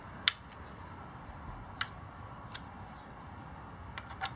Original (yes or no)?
yes